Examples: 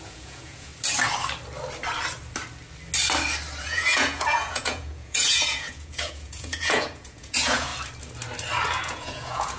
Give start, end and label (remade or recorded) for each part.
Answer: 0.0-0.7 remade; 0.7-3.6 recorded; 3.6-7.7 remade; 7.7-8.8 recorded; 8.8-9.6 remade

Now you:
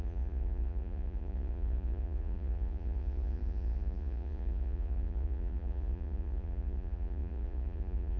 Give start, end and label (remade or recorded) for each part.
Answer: 0.0-8.2 remade

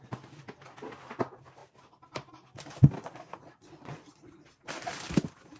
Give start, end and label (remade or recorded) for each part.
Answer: 0.0-3.0 recorded; 3.0-4.2 remade; 4.2-5.6 recorded

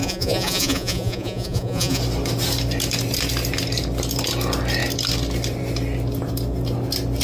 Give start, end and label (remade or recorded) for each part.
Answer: 0.0-2.0 remade; 2.0-7.2 recorded